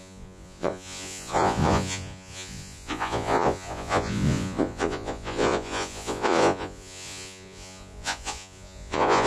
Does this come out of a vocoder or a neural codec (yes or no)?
yes